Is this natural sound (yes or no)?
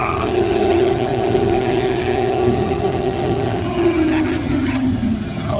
no